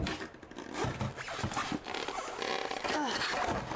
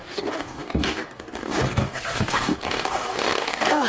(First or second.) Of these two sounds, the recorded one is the first